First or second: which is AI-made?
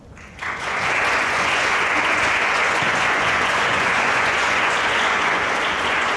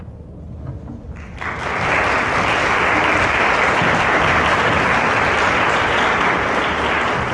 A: first